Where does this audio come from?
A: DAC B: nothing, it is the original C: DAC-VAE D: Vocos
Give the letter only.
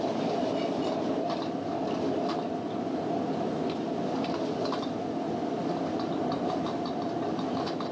B